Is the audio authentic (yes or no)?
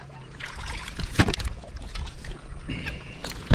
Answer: no